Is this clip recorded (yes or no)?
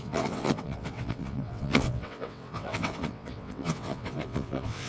no